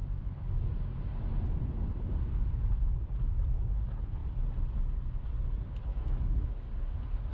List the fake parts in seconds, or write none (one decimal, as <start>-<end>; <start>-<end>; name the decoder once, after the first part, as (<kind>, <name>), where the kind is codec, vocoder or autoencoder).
5.9-6.7 (autoencoder, DAC-VAE)